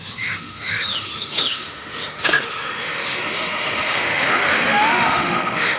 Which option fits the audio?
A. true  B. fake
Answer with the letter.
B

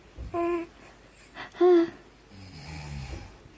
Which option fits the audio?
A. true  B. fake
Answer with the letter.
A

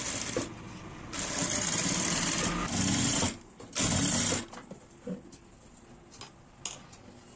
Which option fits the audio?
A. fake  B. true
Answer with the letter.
B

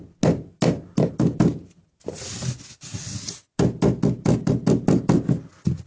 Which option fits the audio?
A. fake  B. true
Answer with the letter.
B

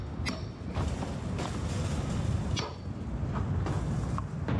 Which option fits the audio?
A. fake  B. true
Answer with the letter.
B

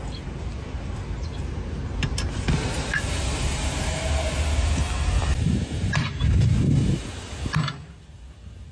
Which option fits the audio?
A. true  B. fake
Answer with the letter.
A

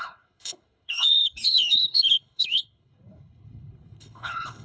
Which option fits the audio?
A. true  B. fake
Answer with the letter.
B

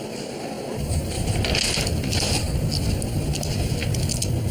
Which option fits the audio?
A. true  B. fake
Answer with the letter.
A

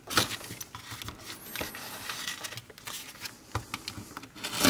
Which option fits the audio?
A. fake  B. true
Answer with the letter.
B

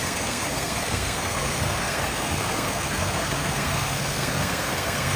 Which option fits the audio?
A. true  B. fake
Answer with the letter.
B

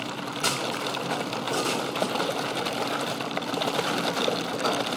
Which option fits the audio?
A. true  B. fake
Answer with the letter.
B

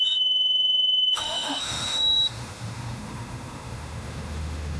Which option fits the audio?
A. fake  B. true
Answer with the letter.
A